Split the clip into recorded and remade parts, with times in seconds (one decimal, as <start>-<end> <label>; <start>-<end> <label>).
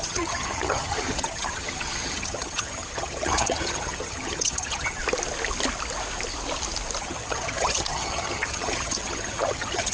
0.0-5.0 remade; 5.0-7.0 recorded; 7.0-9.9 remade